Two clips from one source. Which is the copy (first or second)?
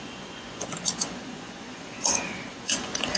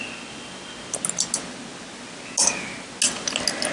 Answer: first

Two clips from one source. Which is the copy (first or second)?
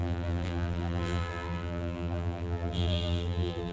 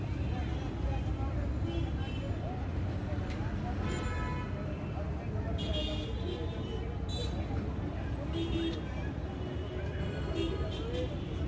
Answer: first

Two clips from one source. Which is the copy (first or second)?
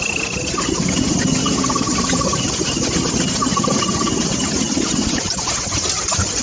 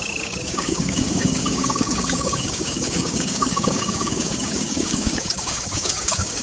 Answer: second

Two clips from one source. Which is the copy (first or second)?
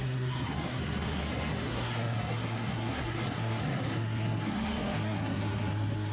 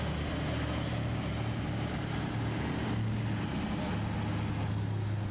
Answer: first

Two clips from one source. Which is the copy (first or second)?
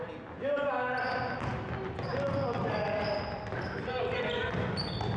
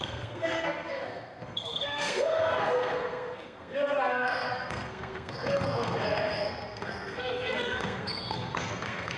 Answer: second